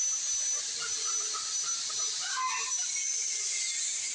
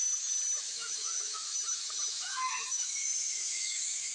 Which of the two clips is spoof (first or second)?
second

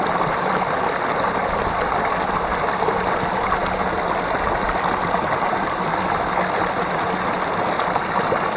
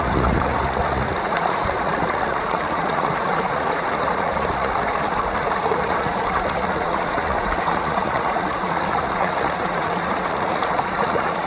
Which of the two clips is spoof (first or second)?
second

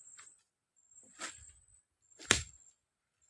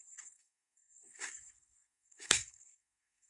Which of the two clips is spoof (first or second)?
second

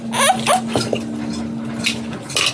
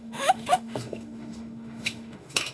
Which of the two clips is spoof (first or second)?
second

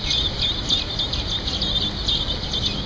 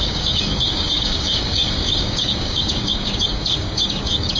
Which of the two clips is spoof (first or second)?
second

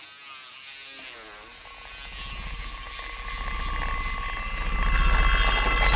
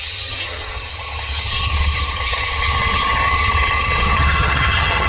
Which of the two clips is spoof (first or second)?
second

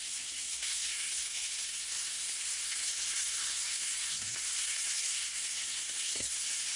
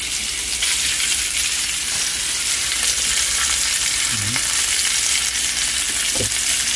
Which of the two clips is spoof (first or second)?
first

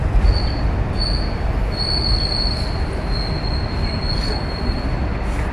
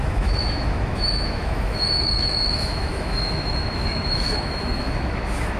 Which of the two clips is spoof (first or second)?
second